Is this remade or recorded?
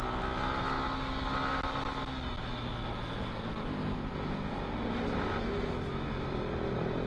recorded